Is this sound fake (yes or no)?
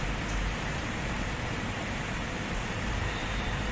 yes